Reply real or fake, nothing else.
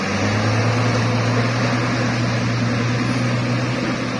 real